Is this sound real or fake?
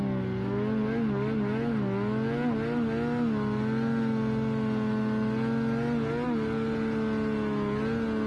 real